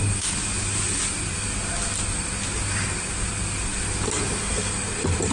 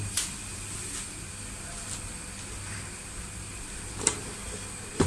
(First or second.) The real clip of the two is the first